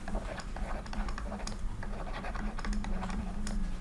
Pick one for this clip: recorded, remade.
remade